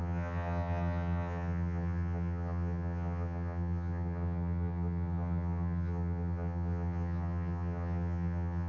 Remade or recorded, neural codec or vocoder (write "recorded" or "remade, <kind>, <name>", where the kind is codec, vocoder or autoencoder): remade, vocoder, HiFi-GAN